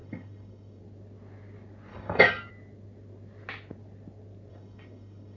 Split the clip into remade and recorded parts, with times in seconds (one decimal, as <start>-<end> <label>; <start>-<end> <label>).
0.0-0.8 remade; 0.8-1.9 recorded; 1.9-2.5 remade; 2.5-4.5 recorded; 4.5-5.4 remade